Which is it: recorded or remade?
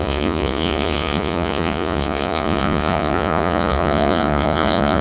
remade